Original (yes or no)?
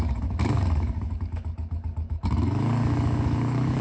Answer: no